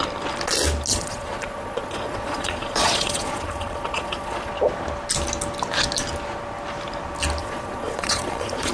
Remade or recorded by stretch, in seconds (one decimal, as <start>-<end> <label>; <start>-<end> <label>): 0.0-0.9 recorded; 0.9-4.5 remade; 4.5-7.4 recorded; 7.4-8.7 remade